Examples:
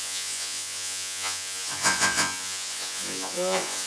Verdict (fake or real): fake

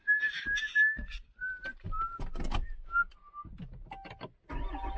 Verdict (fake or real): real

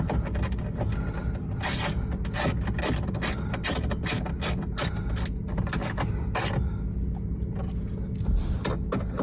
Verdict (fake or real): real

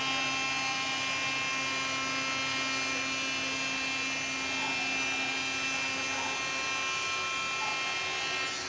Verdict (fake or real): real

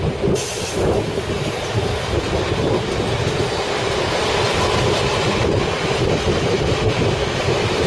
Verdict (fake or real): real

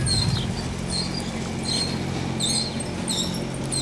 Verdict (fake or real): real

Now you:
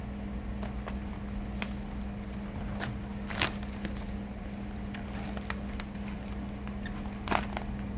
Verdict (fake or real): real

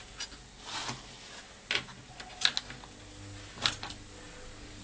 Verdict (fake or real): real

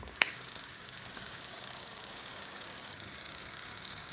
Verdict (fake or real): fake